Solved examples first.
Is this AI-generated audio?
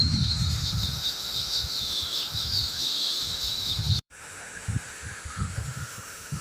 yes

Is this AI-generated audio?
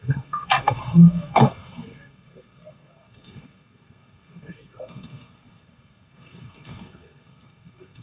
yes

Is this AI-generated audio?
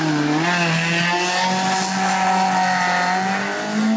no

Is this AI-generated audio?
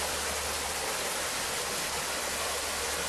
no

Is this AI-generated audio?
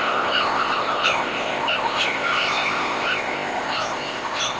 yes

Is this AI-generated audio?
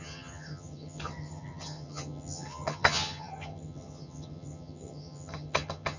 yes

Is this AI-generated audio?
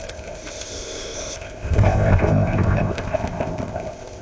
yes